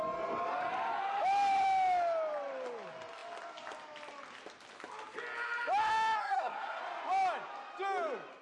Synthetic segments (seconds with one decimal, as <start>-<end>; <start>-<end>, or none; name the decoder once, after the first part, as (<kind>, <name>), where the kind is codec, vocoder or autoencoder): 6.2-6.8 (codec, SNAC)